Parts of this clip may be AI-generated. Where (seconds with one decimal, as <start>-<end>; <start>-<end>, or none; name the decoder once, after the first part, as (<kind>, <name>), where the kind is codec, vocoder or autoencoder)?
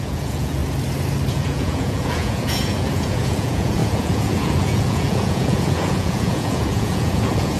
0.0-0.6 (vocoder, Vocos); 1.3-7.6